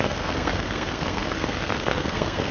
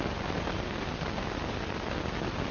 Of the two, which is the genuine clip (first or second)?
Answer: second